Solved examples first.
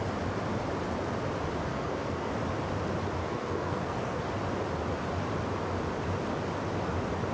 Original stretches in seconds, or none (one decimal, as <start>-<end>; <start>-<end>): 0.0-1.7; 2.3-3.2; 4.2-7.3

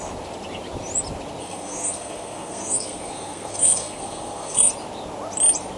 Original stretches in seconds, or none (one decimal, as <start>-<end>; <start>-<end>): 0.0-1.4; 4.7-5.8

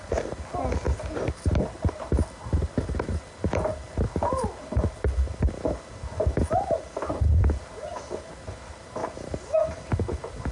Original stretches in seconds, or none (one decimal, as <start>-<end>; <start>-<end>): 0.0-10.5